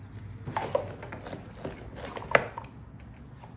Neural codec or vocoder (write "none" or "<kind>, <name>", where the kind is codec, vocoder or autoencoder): none